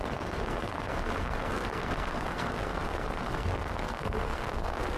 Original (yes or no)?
no